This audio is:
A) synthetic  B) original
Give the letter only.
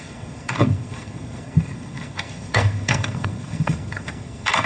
A